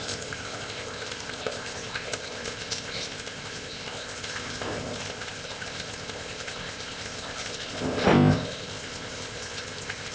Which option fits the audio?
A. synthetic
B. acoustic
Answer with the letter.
A